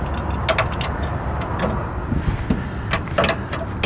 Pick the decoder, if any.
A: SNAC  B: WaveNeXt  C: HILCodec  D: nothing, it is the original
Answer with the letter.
D